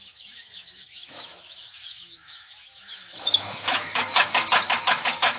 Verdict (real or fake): fake